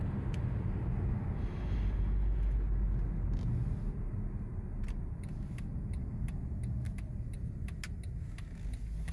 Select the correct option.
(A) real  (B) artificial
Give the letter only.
A